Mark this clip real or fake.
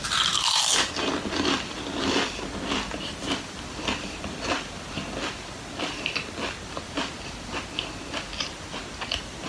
real